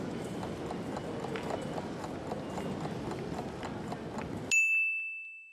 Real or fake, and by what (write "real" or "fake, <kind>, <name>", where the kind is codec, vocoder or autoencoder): real